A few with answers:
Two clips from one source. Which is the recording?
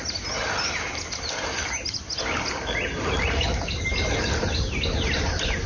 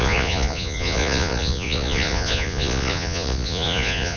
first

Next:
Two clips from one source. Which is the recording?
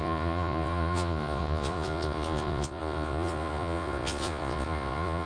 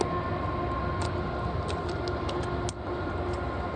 second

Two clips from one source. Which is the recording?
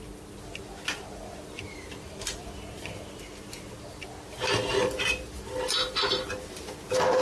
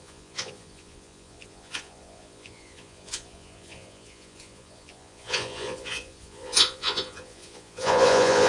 first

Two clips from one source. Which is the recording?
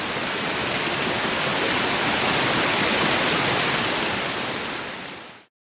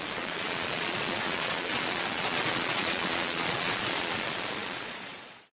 first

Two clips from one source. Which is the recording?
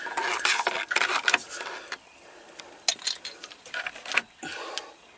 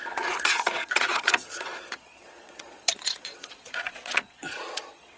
first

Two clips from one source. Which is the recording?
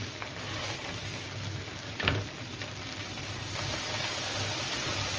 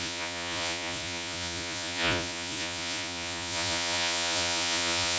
first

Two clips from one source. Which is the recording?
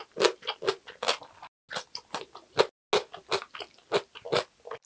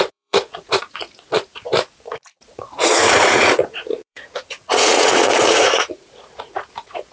first